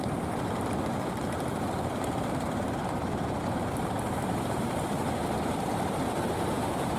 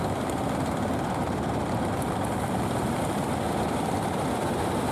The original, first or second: second